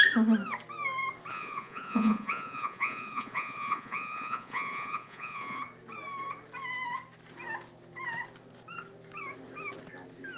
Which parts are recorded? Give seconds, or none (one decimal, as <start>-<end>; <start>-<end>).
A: 0.0-1.3; 5.6-10.4